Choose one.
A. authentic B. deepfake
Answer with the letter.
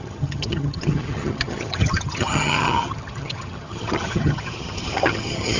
B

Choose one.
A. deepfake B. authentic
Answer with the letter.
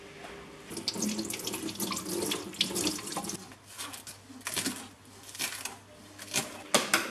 B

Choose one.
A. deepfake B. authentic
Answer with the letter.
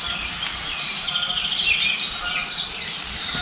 B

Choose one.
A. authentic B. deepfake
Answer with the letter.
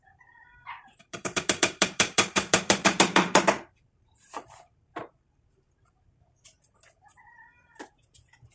B